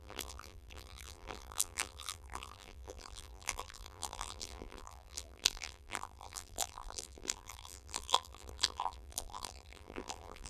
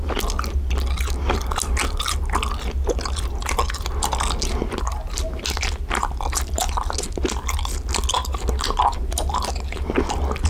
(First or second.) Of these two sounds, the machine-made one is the first